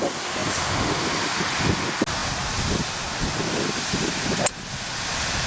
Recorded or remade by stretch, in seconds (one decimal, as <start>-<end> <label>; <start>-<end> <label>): 0.0-5.5 recorded